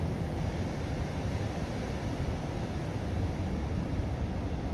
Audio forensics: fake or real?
real